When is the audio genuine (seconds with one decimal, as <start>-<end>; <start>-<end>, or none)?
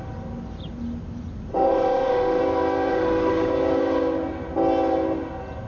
0.0-1.5; 2.4-2.9; 3.5-5.7